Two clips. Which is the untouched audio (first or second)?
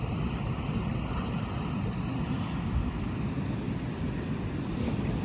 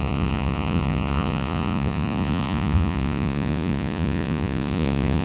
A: first